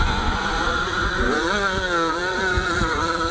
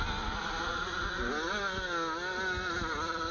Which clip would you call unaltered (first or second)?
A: second